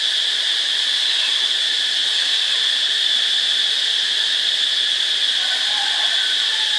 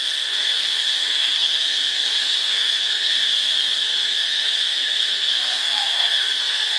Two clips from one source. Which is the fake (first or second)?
second